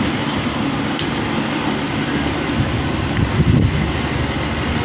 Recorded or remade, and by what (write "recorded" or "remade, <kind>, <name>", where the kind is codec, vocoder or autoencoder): recorded